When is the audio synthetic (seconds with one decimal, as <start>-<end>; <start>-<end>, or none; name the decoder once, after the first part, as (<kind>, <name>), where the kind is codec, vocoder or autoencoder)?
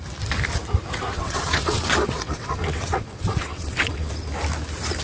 1.1-4.1 (vocoder, WaveNeXt)